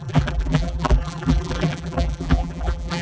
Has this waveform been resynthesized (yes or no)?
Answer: yes